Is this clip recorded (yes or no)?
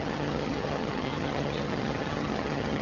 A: no